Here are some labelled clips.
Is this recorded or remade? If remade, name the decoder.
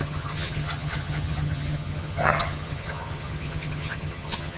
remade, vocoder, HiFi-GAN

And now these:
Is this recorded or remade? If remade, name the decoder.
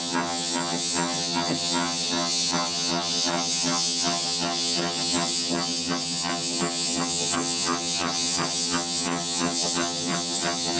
remade, vocoder, HiFi-GAN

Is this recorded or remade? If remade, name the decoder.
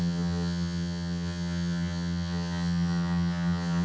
remade, vocoder, HiFi-GAN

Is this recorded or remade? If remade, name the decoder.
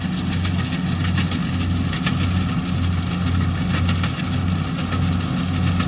recorded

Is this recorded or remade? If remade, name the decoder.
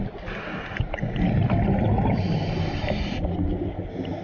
recorded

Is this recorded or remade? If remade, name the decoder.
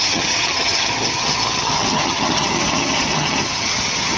remade, vocoder, HiFi-GAN